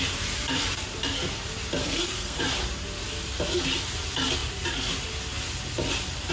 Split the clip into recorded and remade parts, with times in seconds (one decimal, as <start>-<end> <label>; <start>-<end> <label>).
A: 0.0-1.8 recorded; 1.8-2.4 remade; 2.4-6.3 recorded